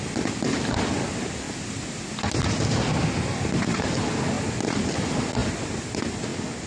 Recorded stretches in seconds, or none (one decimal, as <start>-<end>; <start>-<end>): 0.0-6.7